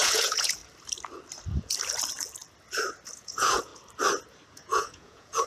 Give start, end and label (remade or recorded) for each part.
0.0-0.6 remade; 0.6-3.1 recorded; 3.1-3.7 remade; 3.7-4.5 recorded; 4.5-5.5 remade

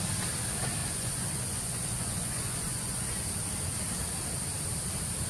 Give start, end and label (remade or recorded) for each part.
0.0-0.8 recorded; 0.8-3.2 remade; 3.2-5.3 recorded